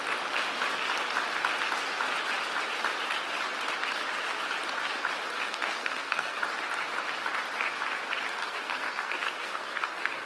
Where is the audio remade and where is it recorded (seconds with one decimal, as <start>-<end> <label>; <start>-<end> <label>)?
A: 0.0-5.3 recorded; 5.3-6.4 remade; 6.4-8.4 recorded; 8.4-10.3 remade